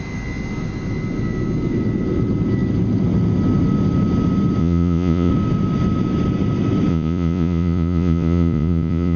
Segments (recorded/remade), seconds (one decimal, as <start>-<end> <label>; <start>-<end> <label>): 0.0-4.6 recorded; 4.6-5.3 remade; 5.3-6.9 recorded; 6.9-9.2 remade